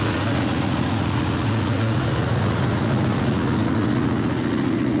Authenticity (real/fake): fake